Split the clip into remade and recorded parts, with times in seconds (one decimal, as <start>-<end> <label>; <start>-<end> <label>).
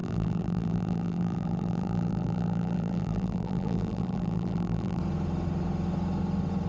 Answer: 0.0-5.0 remade; 5.0-6.7 recorded